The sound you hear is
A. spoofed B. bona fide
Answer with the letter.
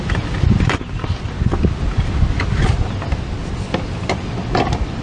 B